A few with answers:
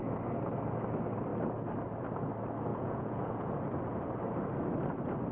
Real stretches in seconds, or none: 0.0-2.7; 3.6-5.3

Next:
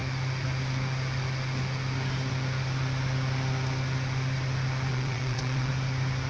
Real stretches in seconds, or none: 0.0-4.9; 5.7-6.3

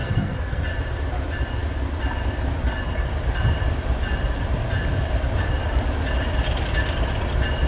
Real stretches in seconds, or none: 0.6-7.7

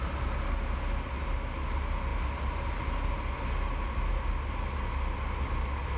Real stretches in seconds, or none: 0.0-6.0

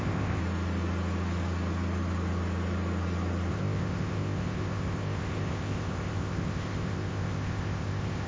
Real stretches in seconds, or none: 0.4-3.5

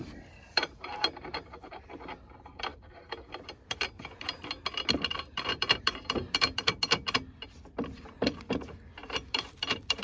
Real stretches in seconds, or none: 1.7-5.1; 6.7-9.0; 9.6-10.0